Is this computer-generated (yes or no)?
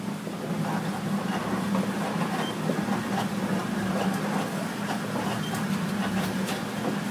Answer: no